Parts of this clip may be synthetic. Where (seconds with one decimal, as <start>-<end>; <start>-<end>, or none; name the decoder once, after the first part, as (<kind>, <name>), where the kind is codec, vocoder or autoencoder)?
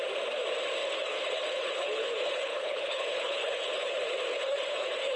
0.8-3.9 (codec, HILCodec); 4.3-5.2